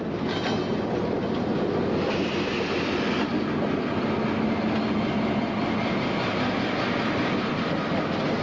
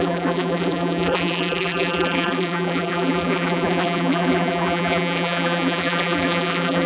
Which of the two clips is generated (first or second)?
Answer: second